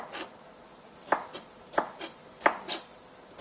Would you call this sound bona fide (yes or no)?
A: yes